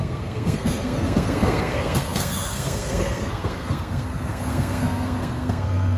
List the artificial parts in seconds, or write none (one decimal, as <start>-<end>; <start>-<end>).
0.0-6.0

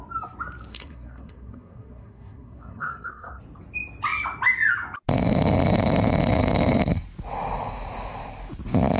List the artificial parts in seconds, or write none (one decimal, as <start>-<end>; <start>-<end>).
0.7-3.4